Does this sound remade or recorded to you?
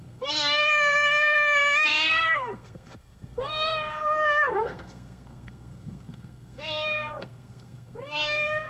remade